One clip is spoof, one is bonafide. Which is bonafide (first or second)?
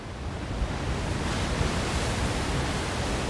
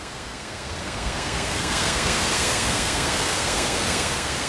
first